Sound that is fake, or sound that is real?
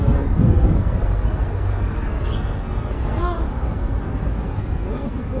fake